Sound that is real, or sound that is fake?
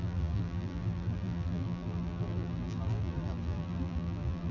fake